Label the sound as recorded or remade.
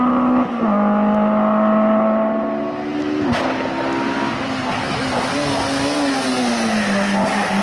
recorded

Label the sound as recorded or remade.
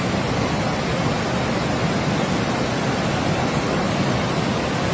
recorded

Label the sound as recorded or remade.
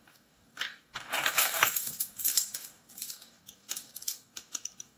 remade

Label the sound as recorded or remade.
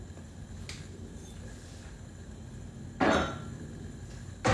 recorded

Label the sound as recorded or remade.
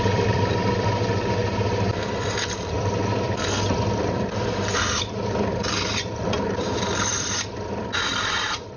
remade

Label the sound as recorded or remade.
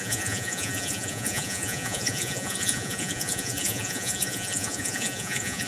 remade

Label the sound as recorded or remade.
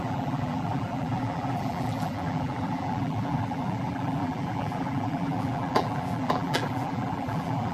remade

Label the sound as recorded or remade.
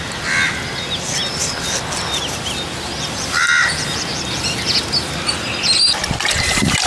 recorded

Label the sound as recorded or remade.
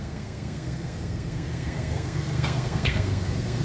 remade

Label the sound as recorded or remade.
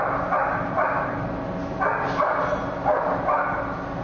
recorded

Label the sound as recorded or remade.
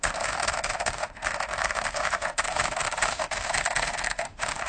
remade